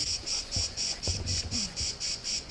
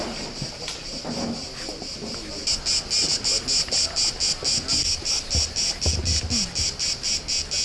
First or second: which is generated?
first